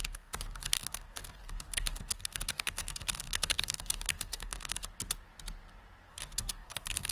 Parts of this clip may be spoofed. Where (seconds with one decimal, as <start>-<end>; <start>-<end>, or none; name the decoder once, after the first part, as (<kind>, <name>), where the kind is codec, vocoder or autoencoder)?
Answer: 0.0-4.8 (codec, DAC); 6.1-7.1